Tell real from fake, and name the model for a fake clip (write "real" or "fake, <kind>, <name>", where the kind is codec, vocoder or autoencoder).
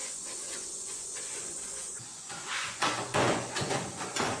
fake, vocoder, Vocos